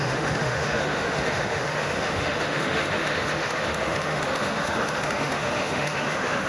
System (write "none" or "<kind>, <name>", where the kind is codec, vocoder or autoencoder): autoencoder, DAC-VAE